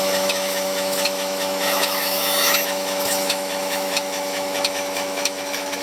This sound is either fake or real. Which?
fake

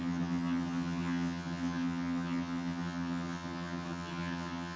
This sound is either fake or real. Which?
fake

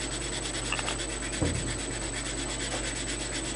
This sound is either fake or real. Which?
real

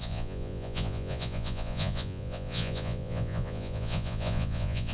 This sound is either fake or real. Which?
fake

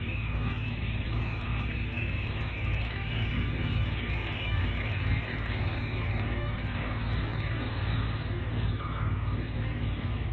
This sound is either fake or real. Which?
fake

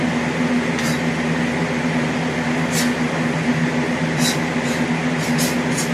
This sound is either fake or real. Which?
real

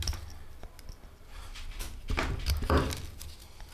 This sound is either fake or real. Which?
real